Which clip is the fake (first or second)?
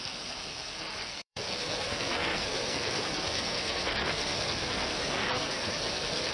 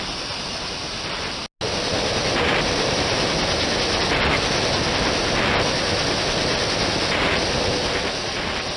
first